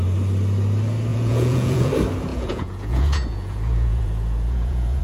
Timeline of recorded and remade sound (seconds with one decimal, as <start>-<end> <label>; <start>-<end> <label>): 0.0-1.1 recorded; 1.1-1.9 remade; 1.9-2.3 recorded; 2.3-5.0 remade